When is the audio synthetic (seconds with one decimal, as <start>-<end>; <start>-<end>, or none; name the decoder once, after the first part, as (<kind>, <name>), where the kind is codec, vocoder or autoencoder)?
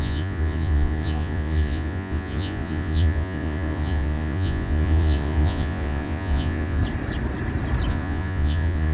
0.0-6.8 (vocoder, Vocos); 7.9-8.9